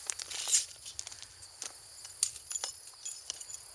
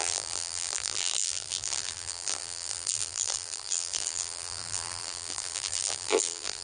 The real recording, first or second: first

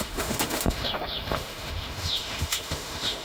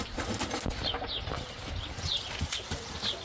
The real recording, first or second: second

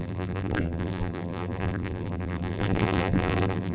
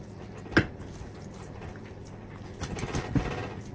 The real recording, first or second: second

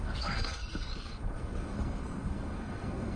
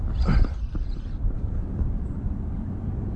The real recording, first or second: second